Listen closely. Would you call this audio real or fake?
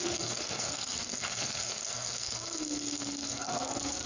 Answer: fake